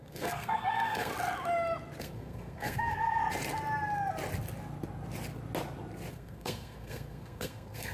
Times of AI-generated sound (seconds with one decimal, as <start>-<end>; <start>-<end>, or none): 0.0-1.1; 2.0-3.2; 6.1-7.9